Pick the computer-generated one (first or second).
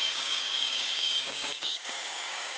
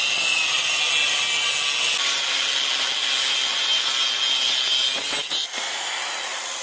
first